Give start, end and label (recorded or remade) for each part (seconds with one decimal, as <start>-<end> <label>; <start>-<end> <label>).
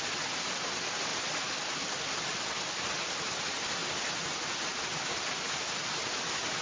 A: 0.0-6.6 recorded